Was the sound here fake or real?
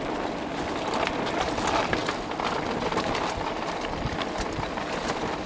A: real